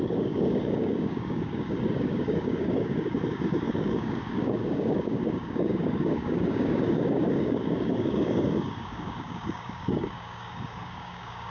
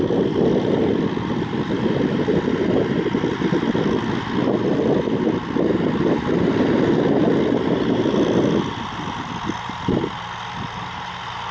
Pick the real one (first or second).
second